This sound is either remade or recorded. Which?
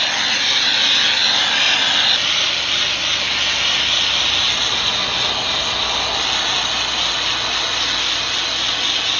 recorded